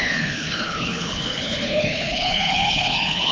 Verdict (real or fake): fake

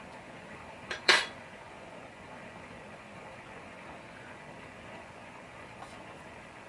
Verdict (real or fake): fake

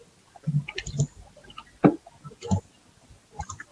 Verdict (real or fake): real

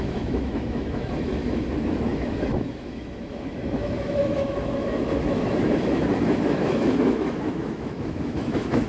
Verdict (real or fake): fake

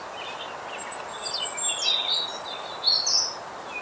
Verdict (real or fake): real